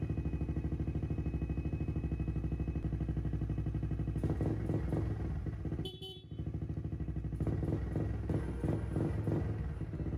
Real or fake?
real